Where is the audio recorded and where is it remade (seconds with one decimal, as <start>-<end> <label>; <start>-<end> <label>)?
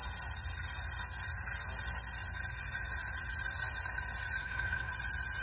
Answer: 0.0-4.4 recorded; 4.4-4.9 remade; 4.9-5.4 recorded